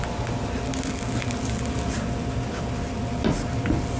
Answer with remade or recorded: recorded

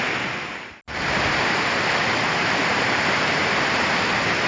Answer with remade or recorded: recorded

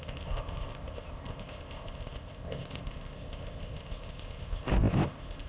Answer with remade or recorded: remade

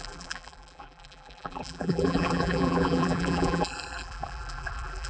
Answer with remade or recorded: remade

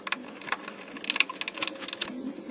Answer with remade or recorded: recorded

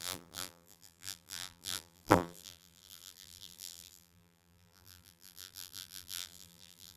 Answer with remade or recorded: remade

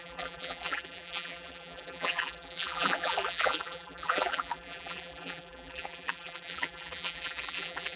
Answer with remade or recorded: remade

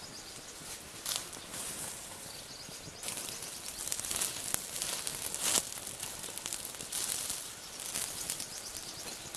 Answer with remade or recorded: recorded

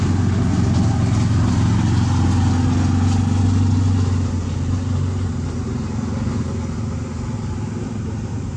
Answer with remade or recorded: recorded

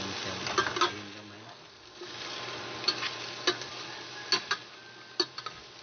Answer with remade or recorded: recorded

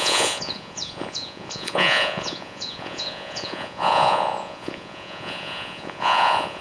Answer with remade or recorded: remade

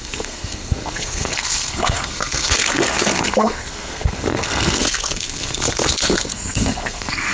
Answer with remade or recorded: remade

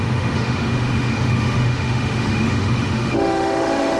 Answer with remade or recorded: remade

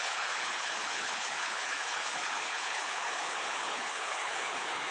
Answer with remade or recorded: remade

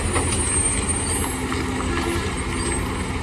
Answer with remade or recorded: recorded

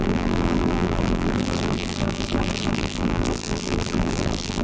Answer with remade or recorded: remade